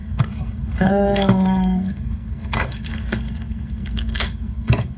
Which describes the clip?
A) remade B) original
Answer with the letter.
A